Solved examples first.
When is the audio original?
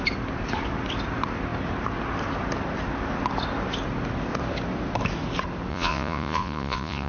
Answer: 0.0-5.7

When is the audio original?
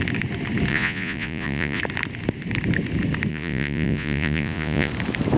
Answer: 0.0-0.7; 1.8-3.3; 4.9-5.4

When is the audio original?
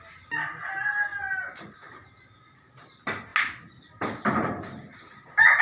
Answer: 0.0-5.6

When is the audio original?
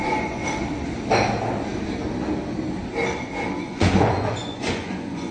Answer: 0.4-3.6